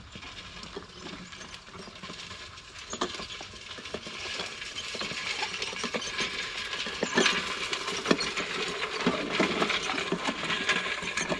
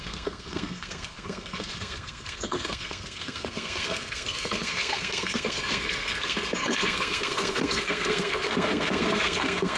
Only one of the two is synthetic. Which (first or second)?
second